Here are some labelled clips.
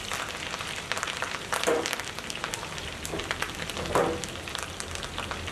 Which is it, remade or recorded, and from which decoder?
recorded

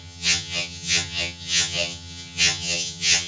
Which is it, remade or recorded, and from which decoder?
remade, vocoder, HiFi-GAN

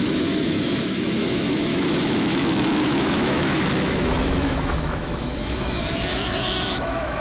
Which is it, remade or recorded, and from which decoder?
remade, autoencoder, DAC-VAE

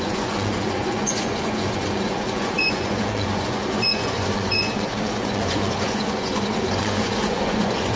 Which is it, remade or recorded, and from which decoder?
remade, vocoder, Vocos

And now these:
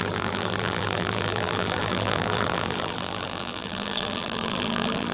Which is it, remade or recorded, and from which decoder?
remade, vocoder, BigVGAN v2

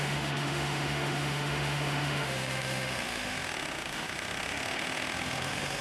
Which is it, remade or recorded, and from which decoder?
remade, autoencoder, DAC-VAE